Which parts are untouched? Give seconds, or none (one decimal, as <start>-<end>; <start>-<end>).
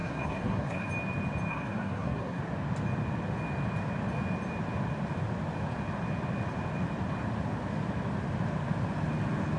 0.9-1.5; 2.4-9.6